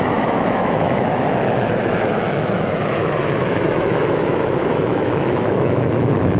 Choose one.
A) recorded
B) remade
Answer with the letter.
B